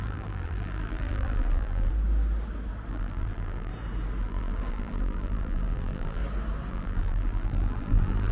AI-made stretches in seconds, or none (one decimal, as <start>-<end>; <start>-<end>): 0.0-1.9; 2.9-3.7; 4.2-6.2; 6.7-8.3